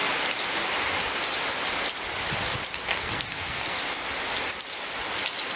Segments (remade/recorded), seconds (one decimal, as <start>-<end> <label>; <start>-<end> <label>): 0.0-2.9 recorded; 2.9-3.8 remade; 3.8-5.6 recorded